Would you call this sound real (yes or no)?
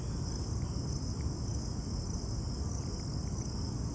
yes